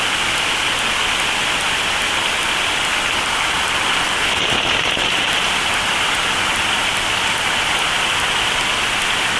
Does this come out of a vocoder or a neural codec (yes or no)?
no